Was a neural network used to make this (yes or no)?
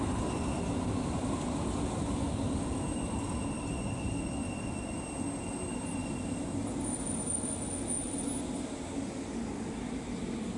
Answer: no